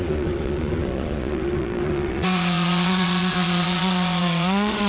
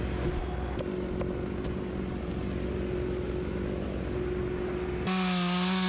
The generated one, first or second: first